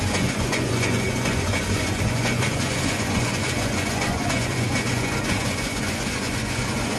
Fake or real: fake